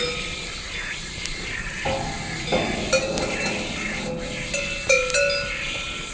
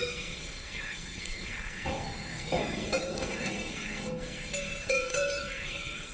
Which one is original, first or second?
first